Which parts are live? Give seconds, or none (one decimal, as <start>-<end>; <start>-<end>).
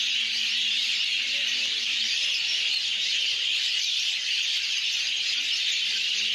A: 0.0-1.5; 4.1-6.3